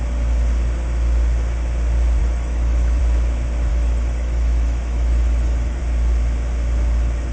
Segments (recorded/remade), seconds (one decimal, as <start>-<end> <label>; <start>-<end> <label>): 0.0-2.2 recorded; 2.2-3.0 remade; 3.0-3.7 recorded; 3.7-5.8 remade; 5.8-7.3 recorded